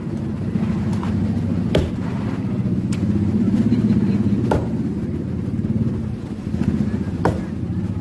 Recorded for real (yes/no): yes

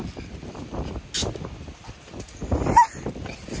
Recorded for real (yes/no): yes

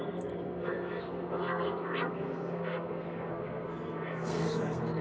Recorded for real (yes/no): no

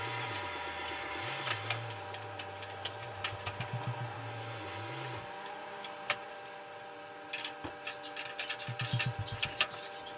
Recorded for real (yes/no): yes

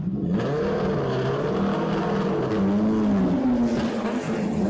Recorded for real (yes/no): yes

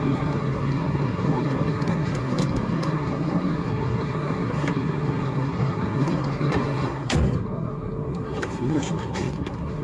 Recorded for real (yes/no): no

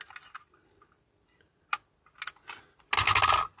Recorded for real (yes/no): yes